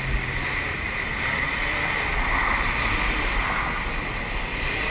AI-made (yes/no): no